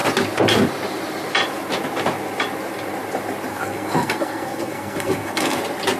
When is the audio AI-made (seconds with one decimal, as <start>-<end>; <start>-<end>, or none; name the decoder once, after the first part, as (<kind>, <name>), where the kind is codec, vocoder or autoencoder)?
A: 3.5-5.6 (codec, SNAC)